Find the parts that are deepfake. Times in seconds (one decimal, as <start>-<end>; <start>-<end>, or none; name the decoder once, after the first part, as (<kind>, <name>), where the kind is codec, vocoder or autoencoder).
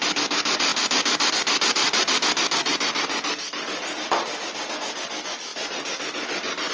none